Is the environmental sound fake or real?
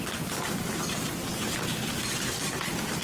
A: real